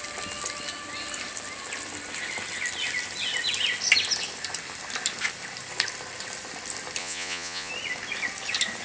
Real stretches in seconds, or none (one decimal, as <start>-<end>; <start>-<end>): 0.0-7.0; 7.7-8.8